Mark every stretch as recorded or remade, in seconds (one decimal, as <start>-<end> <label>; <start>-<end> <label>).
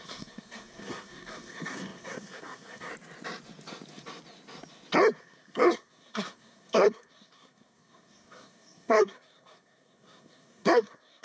0.0-2.9 remade; 2.9-5.2 recorded; 5.2-11.2 remade